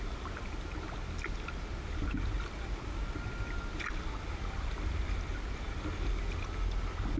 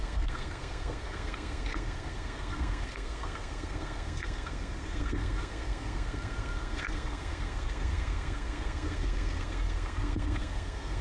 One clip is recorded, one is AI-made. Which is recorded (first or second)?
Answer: first